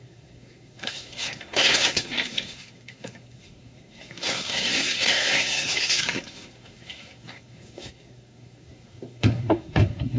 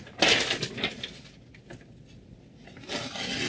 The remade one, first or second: first